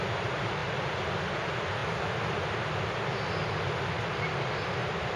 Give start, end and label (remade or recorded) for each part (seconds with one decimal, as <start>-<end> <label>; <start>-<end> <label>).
0.0-5.2 recorded